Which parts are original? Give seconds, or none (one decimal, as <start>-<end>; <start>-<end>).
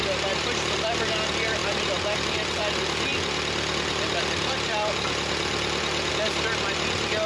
0.0-7.3